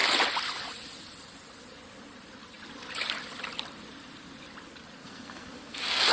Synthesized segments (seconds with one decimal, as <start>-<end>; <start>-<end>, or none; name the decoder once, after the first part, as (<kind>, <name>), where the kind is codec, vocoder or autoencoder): 5.0-6.1 (codec, SNAC)